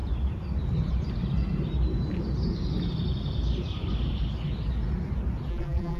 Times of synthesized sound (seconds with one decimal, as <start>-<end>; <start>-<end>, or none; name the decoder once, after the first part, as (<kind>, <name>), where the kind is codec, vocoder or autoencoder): 5.5-6.0 (vocoder, BigVGAN v2)